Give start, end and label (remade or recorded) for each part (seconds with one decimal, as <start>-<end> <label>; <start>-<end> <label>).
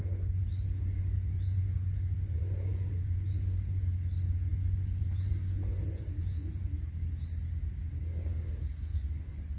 0.0-3.8 remade; 3.8-4.5 recorded; 4.5-6.7 remade; 6.7-8.9 recorded; 8.9-9.6 remade